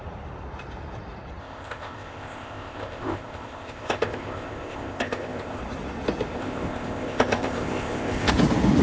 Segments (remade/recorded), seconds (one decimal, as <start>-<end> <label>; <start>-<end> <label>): 0.0-1.4 recorded; 1.4-5.6 remade; 5.6-6.3 recorded; 6.3-8.3 remade; 8.3-8.8 recorded